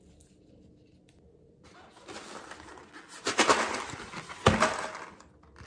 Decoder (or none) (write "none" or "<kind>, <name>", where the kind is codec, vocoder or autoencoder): none